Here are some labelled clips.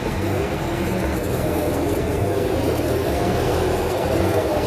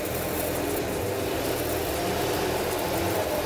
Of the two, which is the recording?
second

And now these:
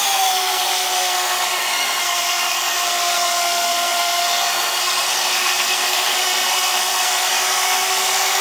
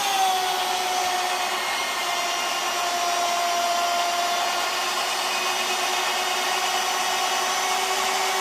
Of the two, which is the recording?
second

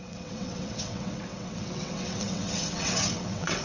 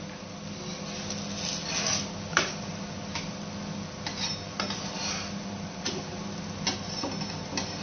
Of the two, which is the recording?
second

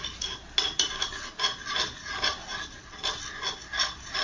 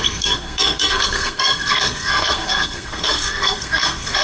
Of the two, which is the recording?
first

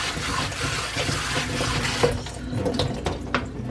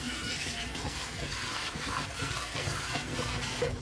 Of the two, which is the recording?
first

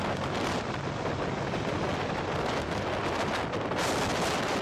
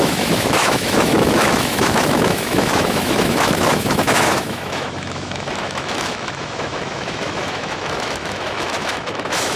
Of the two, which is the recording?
first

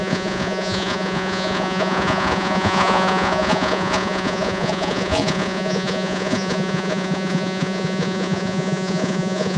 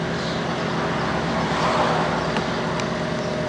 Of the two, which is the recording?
second